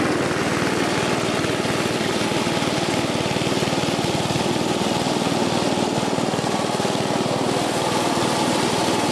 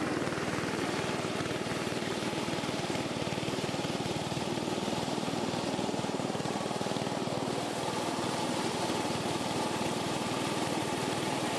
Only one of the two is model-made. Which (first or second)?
second